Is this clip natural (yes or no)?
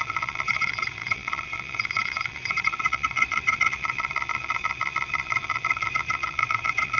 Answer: no